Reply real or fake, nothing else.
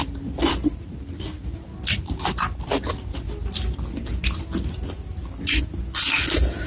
real